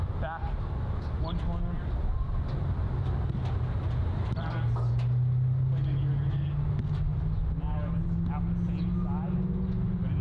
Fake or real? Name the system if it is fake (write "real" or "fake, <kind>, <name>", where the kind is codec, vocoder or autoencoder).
real